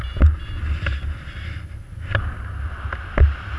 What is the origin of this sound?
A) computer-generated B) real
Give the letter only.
B